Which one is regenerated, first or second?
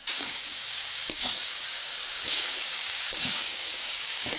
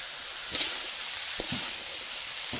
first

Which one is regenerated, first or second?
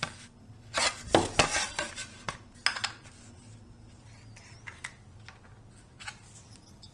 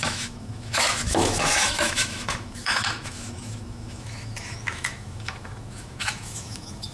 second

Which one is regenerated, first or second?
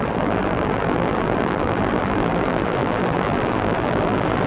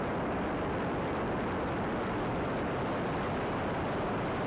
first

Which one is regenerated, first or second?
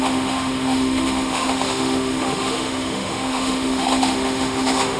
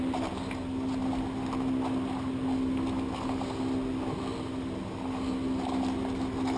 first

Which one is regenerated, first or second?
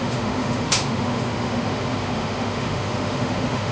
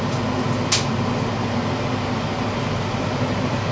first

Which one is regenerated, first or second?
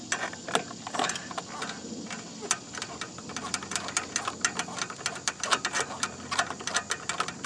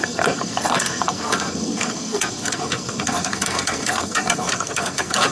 second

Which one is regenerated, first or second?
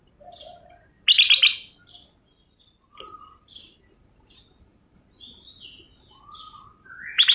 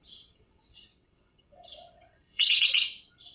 second